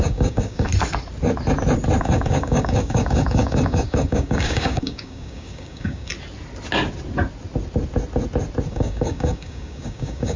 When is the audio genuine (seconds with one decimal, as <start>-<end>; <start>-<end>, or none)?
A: 0.7-2.0; 6.1-8.7